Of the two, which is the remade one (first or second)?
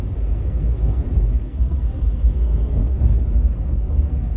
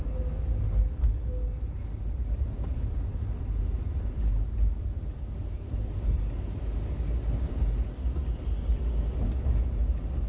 first